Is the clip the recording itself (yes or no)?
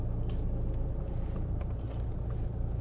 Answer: yes